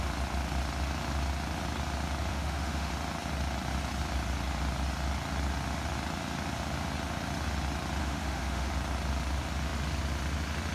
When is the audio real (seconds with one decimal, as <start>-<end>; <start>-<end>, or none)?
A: 0.0-2.3; 2.9-8.0; 8.7-10.7